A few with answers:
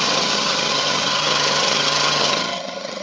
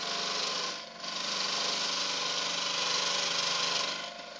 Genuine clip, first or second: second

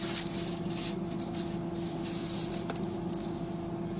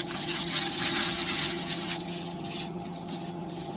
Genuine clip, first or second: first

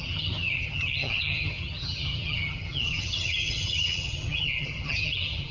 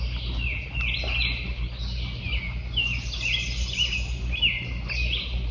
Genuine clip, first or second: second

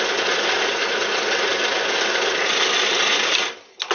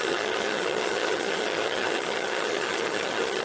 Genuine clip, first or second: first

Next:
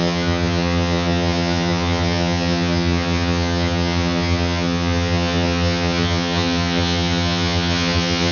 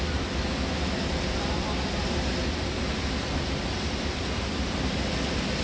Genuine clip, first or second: second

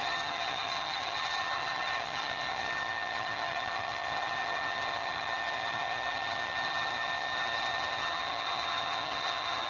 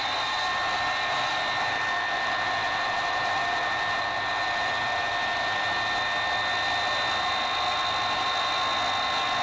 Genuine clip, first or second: second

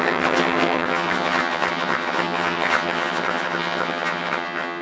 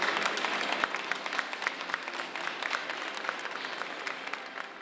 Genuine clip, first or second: second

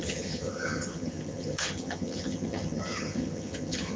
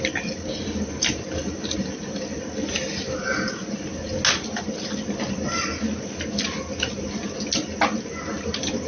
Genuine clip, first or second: second